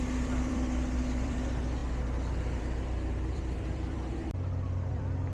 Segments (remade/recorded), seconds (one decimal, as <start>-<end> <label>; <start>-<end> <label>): 0.0-5.3 remade